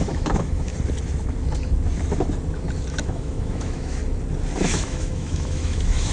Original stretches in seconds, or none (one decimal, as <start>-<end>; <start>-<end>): 0.7-2.9; 4.0-4.6